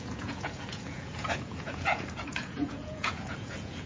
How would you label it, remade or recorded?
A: remade